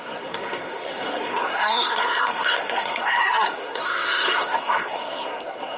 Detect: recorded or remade remade